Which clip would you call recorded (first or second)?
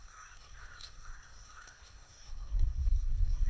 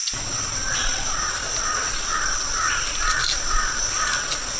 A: second